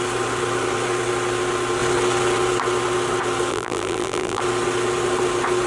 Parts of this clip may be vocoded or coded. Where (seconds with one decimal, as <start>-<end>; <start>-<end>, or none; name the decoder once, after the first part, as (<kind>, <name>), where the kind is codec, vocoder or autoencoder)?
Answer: 3.5-4.4 (vocoder, BigVGAN v2)